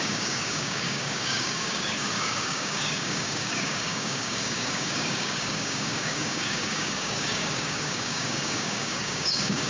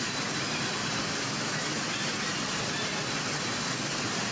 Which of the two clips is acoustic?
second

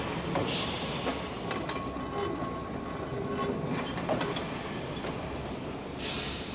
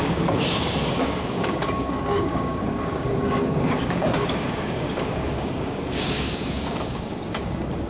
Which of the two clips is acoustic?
first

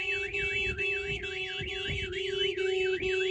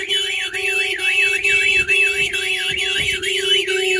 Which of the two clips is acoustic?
first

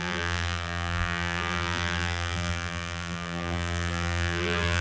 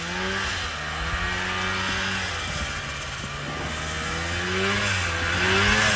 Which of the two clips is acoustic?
second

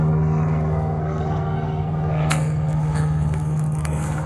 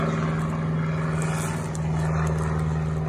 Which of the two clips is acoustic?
second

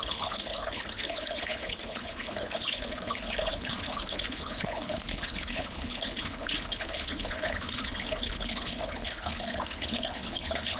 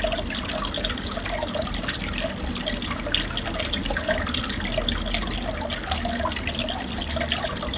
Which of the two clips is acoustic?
second